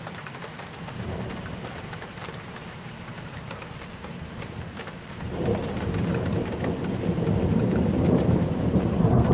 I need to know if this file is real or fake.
fake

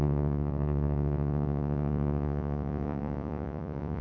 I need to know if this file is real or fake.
fake